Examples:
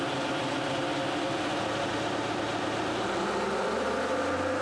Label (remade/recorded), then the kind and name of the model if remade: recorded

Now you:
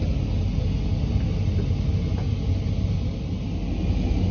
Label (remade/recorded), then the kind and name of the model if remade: recorded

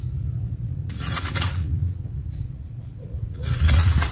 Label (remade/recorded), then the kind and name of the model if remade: remade, vocoder, Vocos